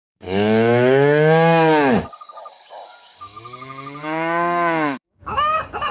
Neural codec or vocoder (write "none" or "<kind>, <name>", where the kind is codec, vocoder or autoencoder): codec, DAC